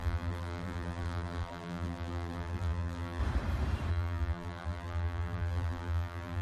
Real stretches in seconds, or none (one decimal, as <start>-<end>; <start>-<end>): 3.2-3.9